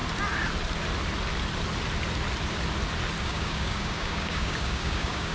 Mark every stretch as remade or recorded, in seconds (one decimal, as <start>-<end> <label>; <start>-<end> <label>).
0.0-3.2 recorded; 3.2-5.3 remade